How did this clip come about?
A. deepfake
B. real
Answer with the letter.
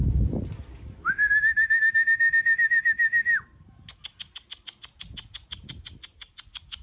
B